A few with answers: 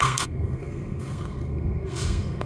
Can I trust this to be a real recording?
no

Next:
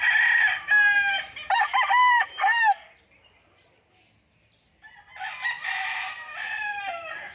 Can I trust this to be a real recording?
yes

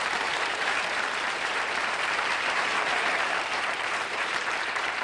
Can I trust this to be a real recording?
no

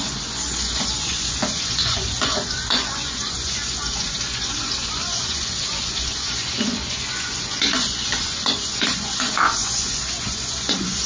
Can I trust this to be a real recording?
no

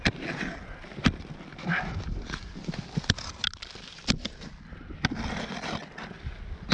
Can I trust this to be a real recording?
yes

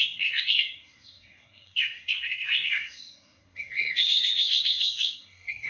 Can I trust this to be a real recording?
no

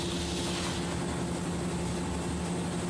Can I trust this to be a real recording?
yes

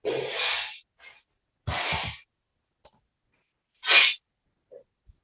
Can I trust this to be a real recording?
yes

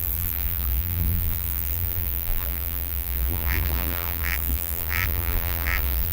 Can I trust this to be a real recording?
no